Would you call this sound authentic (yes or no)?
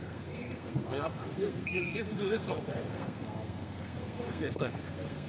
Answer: no